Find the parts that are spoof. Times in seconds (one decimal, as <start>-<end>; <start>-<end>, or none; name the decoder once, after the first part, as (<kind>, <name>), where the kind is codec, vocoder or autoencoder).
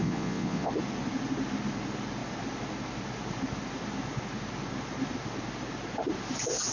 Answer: 0.0-0.7 (vocoder, Vocos)